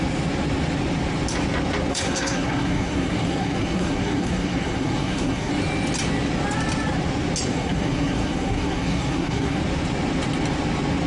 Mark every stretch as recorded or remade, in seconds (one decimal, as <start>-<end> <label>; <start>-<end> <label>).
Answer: 0.0-1.9 recorded; 1.9-5.5 remade; 5.5-7.5 recorded; 7.5-9.6 remade; 9.6-11.1 recorded